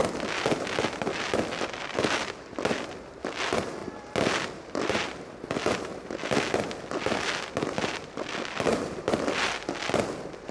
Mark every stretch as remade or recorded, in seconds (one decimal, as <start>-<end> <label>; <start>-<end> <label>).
0.0-10.5 recorded